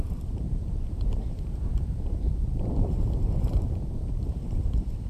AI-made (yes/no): yes